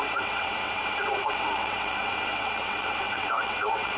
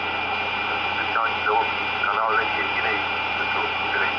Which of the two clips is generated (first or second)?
first